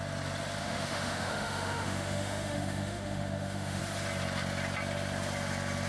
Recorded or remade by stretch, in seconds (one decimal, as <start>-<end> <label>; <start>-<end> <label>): 0.0-0.6 recorded; 0.6-3.8 remade; 3.8-5.9 recorded